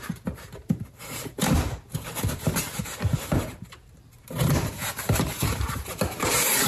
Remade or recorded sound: remade